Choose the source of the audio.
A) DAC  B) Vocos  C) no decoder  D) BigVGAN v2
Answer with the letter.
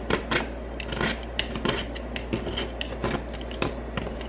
C